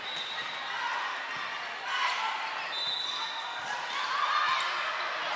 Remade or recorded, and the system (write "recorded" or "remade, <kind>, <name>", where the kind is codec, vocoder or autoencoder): recorded